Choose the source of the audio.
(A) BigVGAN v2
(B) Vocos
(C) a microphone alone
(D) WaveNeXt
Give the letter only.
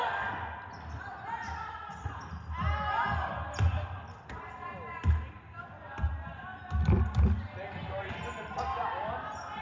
C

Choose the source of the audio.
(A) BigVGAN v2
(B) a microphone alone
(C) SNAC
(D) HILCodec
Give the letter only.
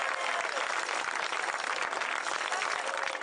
B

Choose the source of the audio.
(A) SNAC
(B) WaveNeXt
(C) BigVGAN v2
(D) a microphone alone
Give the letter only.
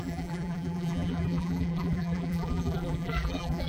C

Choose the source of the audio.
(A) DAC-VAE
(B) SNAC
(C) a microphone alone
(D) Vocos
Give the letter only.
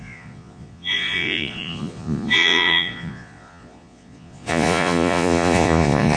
D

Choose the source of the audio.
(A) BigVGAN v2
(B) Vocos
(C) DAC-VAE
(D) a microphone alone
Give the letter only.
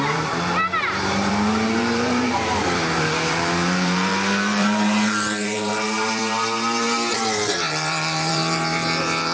A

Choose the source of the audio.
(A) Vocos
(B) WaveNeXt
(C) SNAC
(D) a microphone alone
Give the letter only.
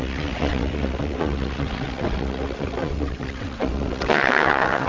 B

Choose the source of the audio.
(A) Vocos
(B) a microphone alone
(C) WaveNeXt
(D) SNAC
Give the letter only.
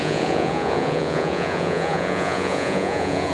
A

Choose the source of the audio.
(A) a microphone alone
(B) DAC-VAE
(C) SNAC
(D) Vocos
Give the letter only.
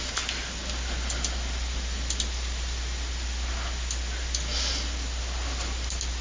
A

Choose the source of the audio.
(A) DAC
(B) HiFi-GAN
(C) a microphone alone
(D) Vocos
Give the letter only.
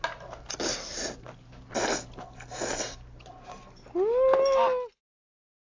C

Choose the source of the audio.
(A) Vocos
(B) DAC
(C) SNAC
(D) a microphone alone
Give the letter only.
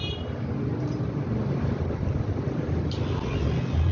D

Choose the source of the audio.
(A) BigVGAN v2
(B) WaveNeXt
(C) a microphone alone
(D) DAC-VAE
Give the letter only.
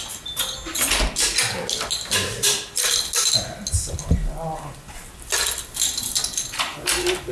C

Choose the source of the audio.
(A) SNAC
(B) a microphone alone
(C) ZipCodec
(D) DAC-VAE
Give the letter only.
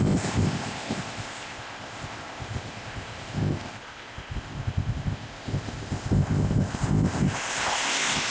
C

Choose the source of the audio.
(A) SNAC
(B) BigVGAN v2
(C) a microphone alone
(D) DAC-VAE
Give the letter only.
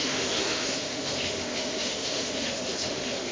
D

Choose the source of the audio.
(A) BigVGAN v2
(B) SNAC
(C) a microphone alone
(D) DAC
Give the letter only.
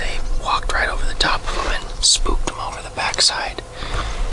C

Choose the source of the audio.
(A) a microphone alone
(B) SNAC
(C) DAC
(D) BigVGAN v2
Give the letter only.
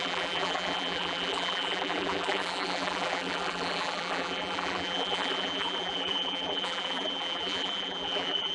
D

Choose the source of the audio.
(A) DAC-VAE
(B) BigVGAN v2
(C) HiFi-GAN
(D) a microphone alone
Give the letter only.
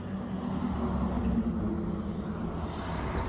D